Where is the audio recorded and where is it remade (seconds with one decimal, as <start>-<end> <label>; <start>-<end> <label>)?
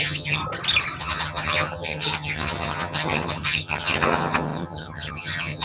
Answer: 0.0-0.4 remade; 0.4-1.0 recorded; 1.0-5.6 remade